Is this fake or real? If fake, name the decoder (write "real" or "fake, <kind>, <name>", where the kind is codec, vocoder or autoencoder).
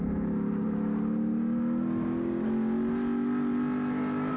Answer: real